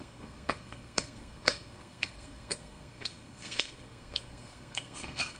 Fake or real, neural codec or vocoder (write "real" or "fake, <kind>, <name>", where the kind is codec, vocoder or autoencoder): fake, codec, SNAC